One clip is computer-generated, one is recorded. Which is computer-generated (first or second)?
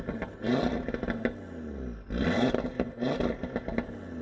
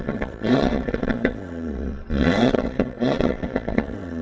second